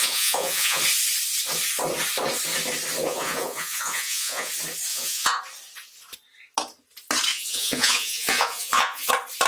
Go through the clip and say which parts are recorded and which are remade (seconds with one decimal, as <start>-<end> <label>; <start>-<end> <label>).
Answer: 0.0-0.8 remade; 0.8-3.0 recorded; 3.0-4.5 remade; 4.5-4.9 recorded; 4.9-5.4 remade; 5.4-7.3 recorded; 7.3-9.1 remade; 9.1-9.5 recorded